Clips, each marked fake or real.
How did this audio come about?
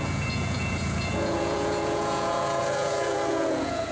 fake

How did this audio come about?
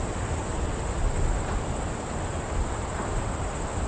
real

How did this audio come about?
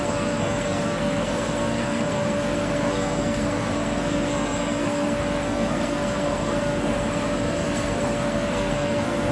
fake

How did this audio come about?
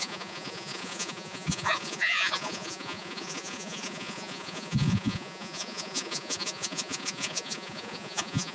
fake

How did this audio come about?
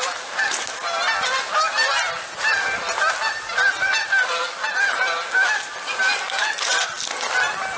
real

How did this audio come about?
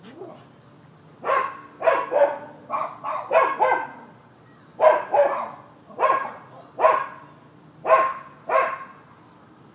real